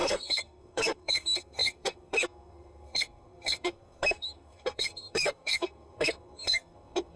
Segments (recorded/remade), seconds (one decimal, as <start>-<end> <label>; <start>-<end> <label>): 0.0-7.2 remade